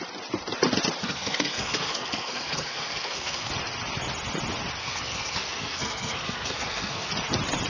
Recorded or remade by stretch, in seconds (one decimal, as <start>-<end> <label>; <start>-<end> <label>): 0.0-1.0 recorded; 1.0-3.5 remade; 3.5-4.8 recorded; 4.8-7.1 remade; 7.1-7.7 recorded